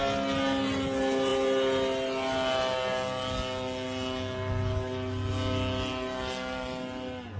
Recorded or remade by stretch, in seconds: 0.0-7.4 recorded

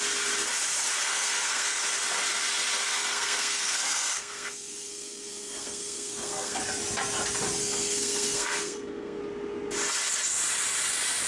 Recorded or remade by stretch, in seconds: 0.0-1.0 recorded; 1.0-1.8 remade; 1.8-2.8 recorded; 2.8-6.6 remade; 6.6-7.6 recorded; 7.6-9.2 remade; 9.2-11.3 recorded

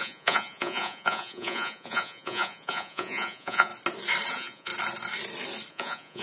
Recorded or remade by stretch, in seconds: 0.0-3.7 remade; 3.7-4.3 recorded; 4.3-4.7 remade; 4.7-5.7 recorded; 5.7-6.2 remade

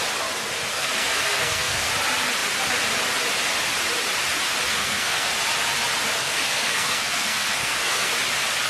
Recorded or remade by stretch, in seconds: 0.0-0.7 recorded; 0.7-1.9 remade; 1.9-4.7 recorded; 4.7-5.3 remade; 5.3-6.2 recorded; 6.2-8.1 remade; 8.1-8.7 recorded

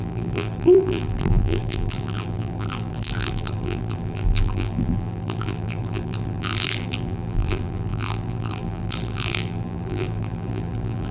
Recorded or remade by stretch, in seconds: 0.0-11.1 remade

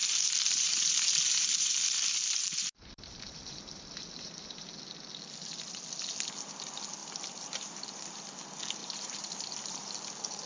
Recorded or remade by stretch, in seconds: 0.0-4.8 remade; 4.8-7.0 recorded; 7.0-8.2 remade; 8.2-8.8 recorded; 8.8-9.9 remade; 9.9-10.5 recorded

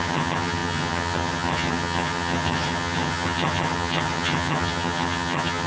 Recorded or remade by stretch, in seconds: 0.0-5.7 remade